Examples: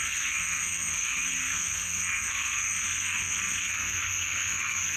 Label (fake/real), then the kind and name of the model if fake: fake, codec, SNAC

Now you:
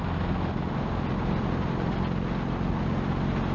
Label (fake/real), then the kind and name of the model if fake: real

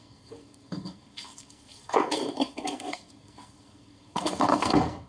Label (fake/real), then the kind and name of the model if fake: fake, codec, SNAC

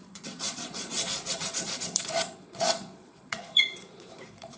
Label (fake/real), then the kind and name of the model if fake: fake, vocoder, Vocos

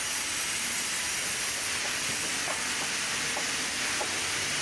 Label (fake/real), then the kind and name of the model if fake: real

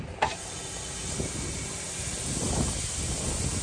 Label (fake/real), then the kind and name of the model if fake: real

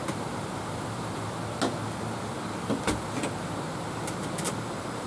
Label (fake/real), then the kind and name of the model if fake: real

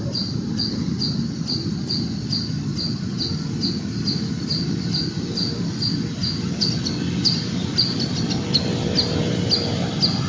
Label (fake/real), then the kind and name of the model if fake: real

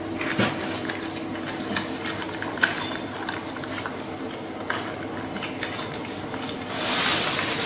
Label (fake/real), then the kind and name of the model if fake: real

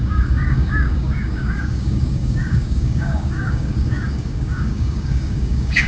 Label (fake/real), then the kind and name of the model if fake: fake, codec, DAC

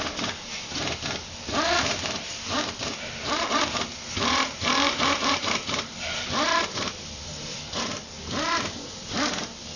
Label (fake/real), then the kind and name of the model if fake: fake, vocoder, BigVGAN v2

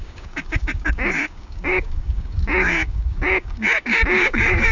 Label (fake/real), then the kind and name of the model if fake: fake, codec, DAC